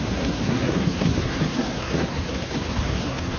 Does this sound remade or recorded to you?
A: remade